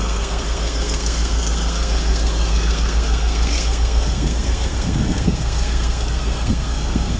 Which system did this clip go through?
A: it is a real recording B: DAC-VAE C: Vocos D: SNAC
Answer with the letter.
D